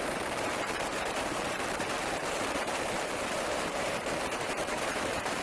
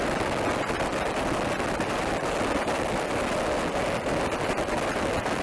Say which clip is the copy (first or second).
first